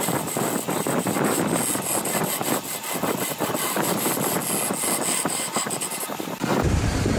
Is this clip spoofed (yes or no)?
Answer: no